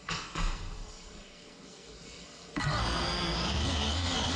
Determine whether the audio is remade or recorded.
remade